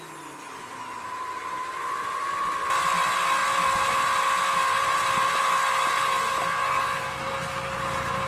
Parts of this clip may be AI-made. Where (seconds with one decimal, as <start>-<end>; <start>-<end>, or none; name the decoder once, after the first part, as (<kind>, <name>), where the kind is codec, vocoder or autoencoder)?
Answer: 0.4-2.3 (vocoder, BigVGAN v2)